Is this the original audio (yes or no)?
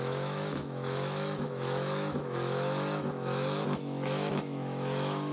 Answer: no